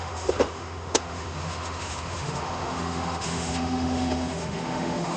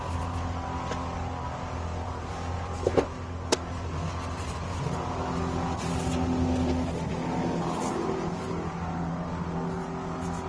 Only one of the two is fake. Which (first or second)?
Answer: first